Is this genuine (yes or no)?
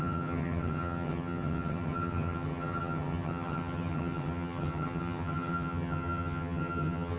no